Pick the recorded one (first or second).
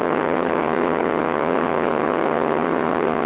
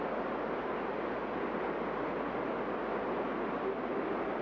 second